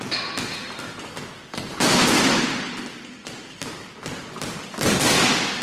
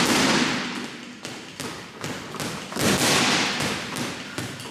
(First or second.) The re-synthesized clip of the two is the first